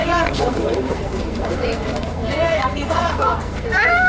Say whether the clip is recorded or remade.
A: remade